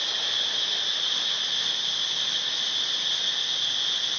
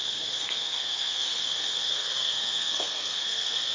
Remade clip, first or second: second